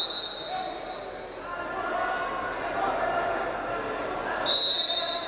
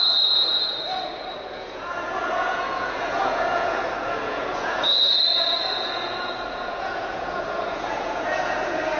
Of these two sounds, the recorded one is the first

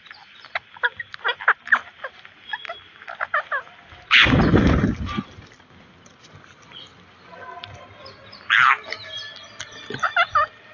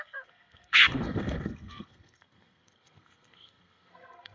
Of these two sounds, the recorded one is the first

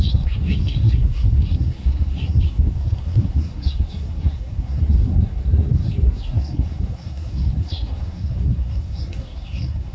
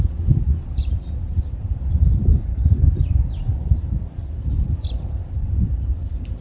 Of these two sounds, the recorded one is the second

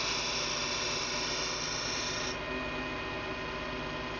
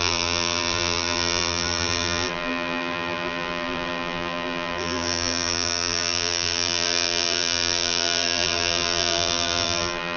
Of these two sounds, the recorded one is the first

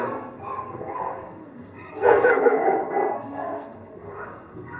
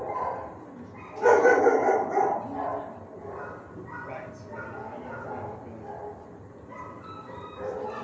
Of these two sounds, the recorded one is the second